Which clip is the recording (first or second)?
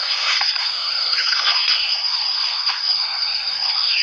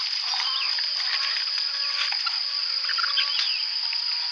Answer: second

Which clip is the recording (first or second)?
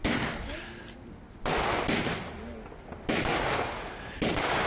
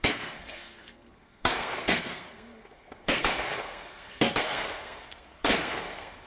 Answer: first